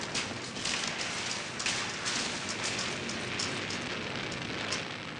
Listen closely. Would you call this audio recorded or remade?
recorded